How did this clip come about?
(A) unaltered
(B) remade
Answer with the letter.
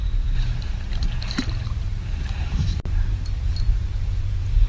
B